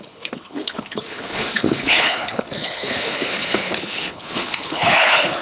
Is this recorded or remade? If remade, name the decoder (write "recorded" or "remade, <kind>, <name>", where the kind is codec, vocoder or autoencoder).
remade, codec, HILCodec